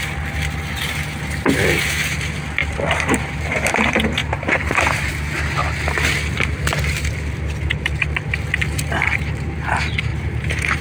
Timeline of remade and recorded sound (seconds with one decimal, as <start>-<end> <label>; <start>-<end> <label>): 0.0-2.6 recorded; 2.6-3.7 remade; 3.7-4.2 recorded; 4.2-5.1 remade; 5.1-10.1 recorded; 10.1-10.8 remade